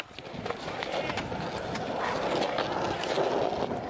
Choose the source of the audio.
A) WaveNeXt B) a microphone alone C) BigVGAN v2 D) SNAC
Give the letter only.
B